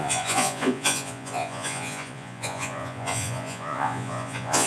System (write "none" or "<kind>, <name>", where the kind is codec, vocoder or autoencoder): vocoder, Vocos